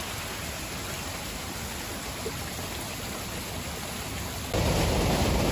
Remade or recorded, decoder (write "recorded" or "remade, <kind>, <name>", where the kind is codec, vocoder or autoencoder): recorded